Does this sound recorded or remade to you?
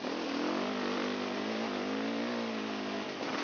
recorded